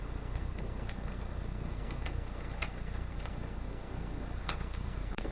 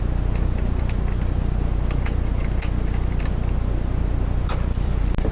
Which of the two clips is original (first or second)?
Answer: second